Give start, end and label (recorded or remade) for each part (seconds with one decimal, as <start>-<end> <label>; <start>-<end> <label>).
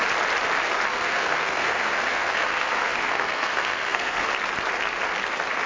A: 0.0-0.9 recorded; 0.9-4.3 remade; 4.3-5.7 recorded